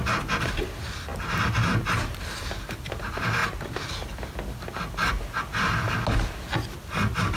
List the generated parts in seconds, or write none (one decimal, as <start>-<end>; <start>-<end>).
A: 0.0-0.6; 1.1-2.7; 3.4-3.9

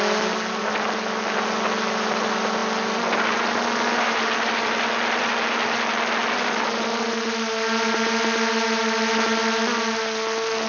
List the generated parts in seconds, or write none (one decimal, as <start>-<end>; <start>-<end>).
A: none

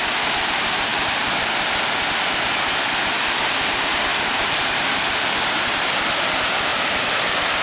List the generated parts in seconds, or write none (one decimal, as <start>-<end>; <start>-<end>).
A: 0.9-1.9; 4.1-4.7; 6.7-7.6

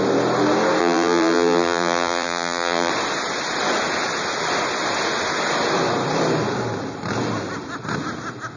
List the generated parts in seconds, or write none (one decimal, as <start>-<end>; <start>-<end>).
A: 0.8-2.9

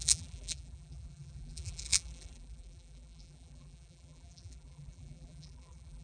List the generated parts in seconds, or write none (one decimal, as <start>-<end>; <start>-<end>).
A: 0.0-6.0